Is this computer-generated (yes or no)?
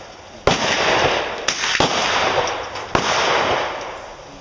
no